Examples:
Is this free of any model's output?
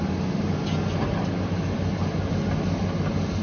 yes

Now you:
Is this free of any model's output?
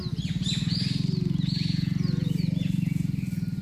yes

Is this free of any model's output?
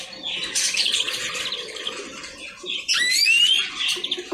yes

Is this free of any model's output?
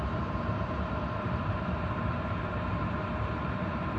no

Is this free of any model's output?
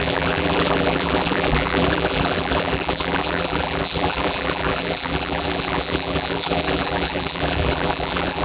no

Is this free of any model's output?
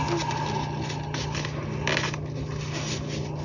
yes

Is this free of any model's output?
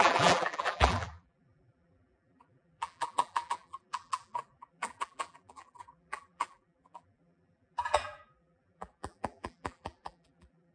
no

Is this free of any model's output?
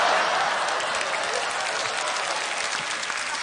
yes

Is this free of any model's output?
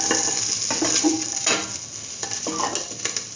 yes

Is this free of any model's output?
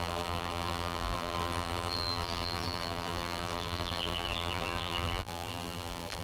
no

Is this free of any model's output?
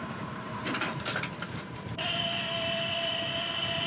no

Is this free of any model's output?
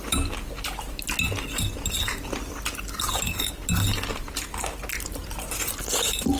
yes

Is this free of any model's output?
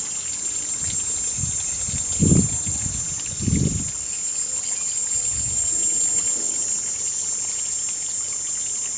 yes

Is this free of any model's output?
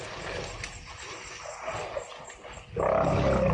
yes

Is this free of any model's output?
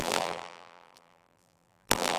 no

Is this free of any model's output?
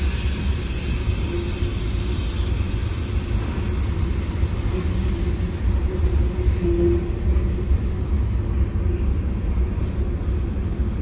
yes